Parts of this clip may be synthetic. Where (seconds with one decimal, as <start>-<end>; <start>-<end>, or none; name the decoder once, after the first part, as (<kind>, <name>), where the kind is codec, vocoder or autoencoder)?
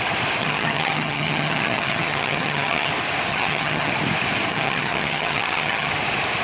0.4-2.9 (vocoder, HiFi-GAN); 3.3-3.9; 4.5-5.9